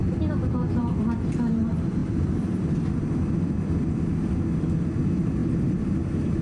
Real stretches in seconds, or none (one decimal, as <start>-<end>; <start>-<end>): 0.0-5.4; 5.9-6.4